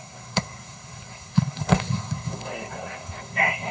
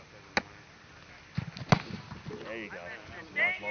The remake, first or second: first